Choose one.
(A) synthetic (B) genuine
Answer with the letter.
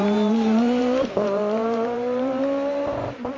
A